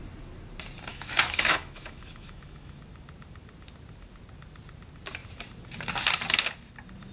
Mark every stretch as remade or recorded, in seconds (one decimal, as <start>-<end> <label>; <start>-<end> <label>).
0.0-0.9 recorded; 0.9-2.8 remade; 2.8-7.1 recorded